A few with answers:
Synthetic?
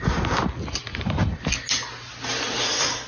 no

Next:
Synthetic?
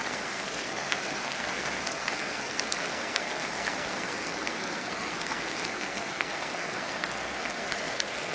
yes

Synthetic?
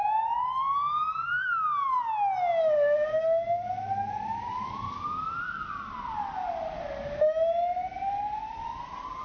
no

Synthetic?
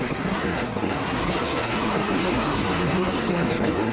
yes